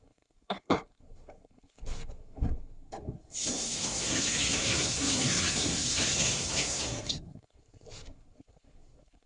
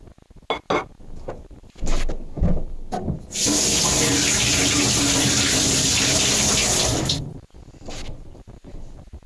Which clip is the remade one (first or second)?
first